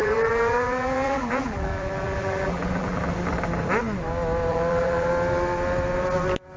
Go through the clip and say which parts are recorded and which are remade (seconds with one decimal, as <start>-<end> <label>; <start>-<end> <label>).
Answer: 0.0-3.1 remade; 3.1-4.5 recorded; 4.5-5.1 remade; 5.1-6.6 recorded